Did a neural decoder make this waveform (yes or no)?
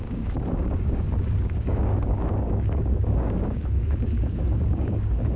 yes